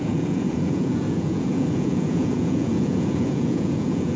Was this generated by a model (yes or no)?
yes